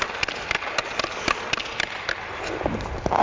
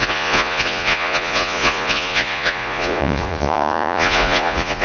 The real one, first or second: first